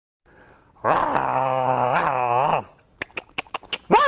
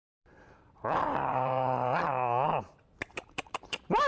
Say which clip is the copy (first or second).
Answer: second